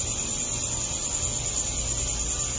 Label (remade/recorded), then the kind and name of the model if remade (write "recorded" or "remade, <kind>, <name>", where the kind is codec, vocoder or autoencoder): recorded